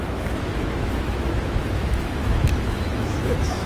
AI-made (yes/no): yes